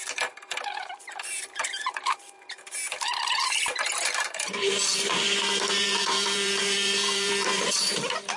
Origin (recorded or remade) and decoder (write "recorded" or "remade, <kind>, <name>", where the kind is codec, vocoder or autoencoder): remade, vocoder, BigVGAN v2